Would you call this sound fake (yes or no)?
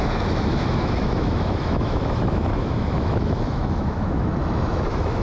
yes